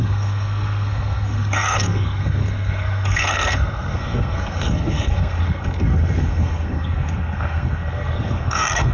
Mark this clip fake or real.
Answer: fake